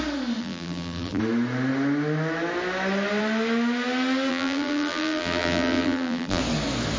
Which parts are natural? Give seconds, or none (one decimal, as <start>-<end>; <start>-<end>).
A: 0.0-0.4; 1.2-4.3; 6.4-7.0